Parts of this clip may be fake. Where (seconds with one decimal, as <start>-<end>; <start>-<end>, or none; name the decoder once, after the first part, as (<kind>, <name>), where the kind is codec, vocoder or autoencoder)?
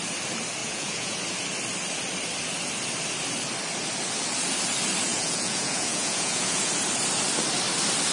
0.6-1.2 (vocoder, Vocos); 5.1-6.7